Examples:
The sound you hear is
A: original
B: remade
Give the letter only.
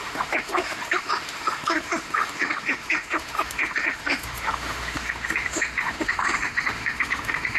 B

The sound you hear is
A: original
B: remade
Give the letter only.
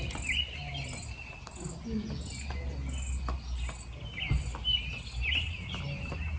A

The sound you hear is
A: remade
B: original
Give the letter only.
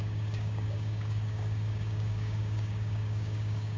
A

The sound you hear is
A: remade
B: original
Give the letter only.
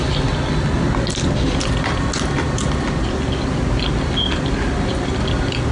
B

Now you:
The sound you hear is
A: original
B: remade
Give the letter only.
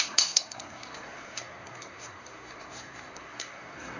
B